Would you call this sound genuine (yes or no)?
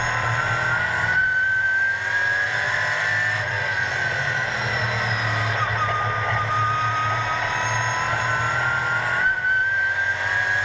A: yes